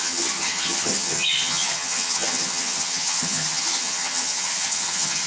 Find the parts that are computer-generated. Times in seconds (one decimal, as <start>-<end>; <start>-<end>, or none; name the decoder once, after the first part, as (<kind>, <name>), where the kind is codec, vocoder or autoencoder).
0.0-5.3 (vocoder, HiFi-GAN)

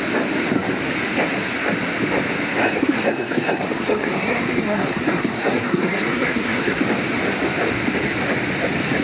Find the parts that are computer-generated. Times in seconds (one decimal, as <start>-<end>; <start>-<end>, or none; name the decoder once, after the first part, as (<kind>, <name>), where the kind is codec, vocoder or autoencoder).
2.6-6.8 (codec, SNAC)

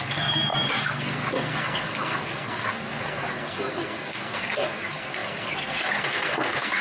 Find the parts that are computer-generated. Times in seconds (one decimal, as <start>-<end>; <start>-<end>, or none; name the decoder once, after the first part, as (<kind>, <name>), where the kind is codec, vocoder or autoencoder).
0.0-6.8 (codec, SNAC)

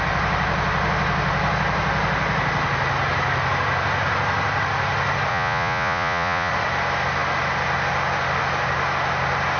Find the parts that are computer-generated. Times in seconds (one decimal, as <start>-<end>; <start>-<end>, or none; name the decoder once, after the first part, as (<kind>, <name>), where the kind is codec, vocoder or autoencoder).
5.3-6.5 (vocoder, Vocos)